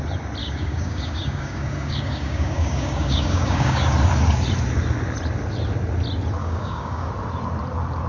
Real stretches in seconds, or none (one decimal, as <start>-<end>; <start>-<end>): 0.0-0.4; 3.9-6.4; 7.1-8.1